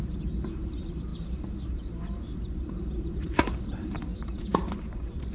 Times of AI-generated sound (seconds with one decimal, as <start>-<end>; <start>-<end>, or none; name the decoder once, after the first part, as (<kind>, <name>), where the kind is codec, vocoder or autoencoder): 0.0-5.3 (vocoder, BigVGAN v2)